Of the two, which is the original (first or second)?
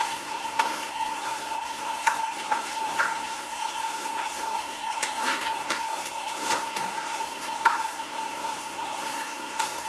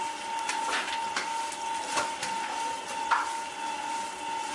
second